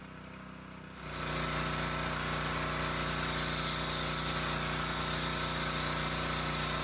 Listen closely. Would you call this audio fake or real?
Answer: real